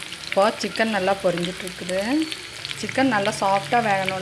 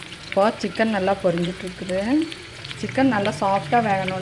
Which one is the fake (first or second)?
second